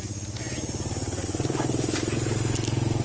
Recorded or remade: recorded